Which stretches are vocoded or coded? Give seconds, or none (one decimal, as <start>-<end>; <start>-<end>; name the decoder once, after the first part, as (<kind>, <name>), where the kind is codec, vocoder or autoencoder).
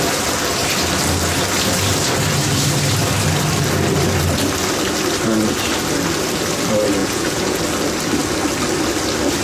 7.0-7.6 (vocoder, Vocos)